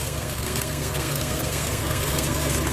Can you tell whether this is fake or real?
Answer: fake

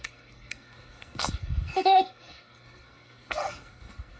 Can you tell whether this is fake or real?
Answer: fake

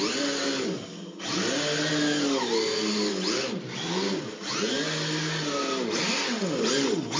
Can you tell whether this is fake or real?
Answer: real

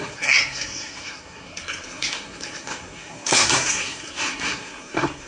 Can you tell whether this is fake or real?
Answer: fake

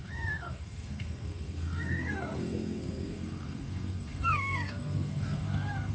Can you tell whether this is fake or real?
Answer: fake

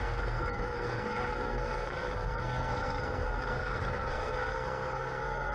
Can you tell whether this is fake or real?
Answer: fake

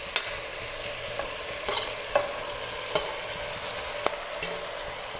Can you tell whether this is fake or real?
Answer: real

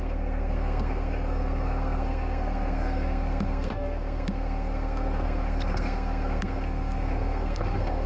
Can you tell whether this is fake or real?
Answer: fake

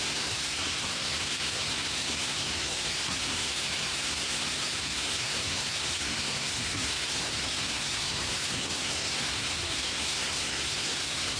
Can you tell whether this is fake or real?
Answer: fake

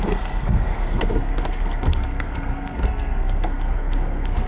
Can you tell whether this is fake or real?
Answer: fake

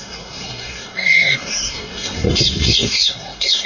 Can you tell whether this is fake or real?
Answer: fake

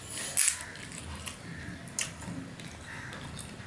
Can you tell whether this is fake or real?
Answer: real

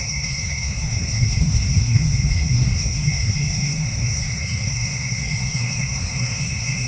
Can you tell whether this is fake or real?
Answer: fake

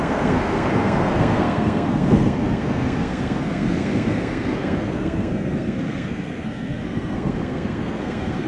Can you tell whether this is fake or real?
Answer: fake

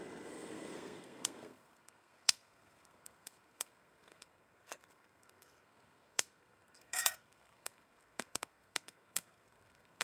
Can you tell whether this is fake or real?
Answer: fake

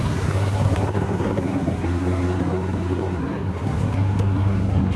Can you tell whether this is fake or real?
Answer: fake